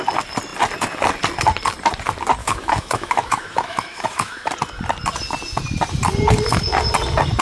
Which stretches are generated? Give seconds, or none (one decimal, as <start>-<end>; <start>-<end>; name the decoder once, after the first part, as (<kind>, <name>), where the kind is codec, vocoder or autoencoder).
2.4-4.5 (autoencoder, DAC-VAE)

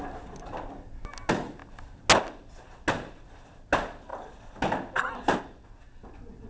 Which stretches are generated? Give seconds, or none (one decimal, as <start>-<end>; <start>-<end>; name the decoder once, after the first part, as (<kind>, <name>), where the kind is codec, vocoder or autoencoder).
none

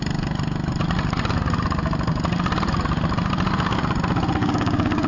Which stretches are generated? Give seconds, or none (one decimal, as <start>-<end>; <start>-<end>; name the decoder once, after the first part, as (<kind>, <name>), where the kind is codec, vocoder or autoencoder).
4.4-5.1 (codec, DAC)

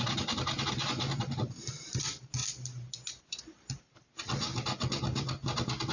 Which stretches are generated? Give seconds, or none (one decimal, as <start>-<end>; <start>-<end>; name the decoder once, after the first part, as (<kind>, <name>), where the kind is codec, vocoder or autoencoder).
none